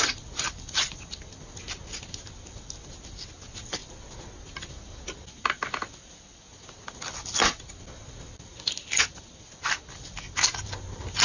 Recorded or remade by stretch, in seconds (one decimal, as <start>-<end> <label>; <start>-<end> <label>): 0.0-11.2 recorded